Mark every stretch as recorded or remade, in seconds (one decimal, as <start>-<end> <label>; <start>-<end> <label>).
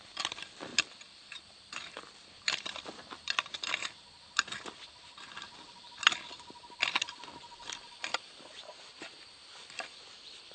0.0-10.5 remade